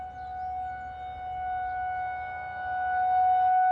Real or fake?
real